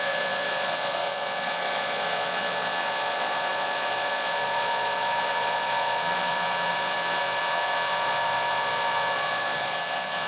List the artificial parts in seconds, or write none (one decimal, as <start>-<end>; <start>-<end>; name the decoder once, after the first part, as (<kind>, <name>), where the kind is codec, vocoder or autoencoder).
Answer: 0.0-10.3 (vocoder, Vocos)